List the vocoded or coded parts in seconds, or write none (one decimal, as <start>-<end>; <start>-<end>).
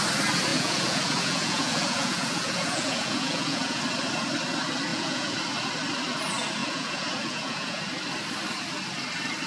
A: 0.5-3.8; 4.9-5.4; 6.6-7.8